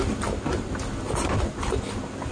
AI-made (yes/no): no